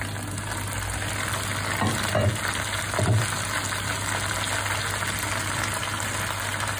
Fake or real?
real